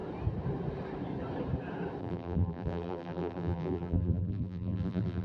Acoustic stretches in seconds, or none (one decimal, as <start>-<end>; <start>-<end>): 0.0-2.0